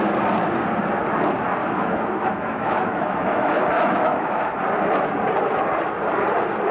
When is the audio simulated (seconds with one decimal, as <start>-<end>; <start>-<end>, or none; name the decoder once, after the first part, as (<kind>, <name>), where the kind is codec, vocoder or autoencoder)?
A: 1.6-4.4 (autoencoder, DAC-VAE)